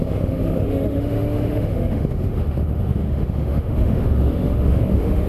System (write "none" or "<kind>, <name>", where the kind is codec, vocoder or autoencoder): autoencoder, DAC-VAE